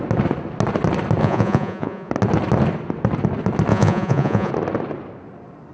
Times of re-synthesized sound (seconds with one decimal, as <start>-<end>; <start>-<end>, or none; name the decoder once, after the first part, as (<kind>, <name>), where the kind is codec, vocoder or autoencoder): 1.2-2.1 (vocoder, Vocos); 3.7-4.5